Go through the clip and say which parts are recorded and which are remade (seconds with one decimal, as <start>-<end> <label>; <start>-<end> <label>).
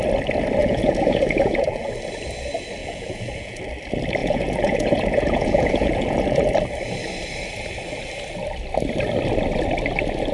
0.0-0.6 recorded; 0.6-1.9 remade; 1.9-2.8 recorded; 2.8-3.6 remade; 3.6-4.2 recorded; 4.2-6.5 remade; 6.5-10.3 recorded